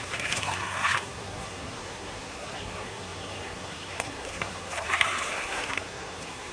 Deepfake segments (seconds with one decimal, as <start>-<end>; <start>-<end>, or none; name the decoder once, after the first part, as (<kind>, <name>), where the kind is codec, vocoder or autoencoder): 0.0-6.5 (codec, SNAC)

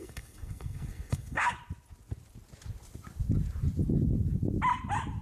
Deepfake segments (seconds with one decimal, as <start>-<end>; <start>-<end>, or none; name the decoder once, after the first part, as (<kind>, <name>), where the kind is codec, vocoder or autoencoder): 0.0-1.5 (codec, SNAC)

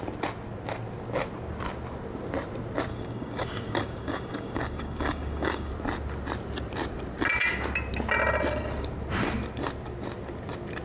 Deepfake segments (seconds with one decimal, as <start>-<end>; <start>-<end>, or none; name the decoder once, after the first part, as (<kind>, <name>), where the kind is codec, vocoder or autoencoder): 2.9-5.7 (codec, DAC)